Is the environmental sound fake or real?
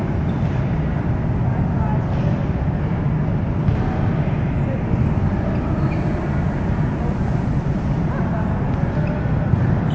real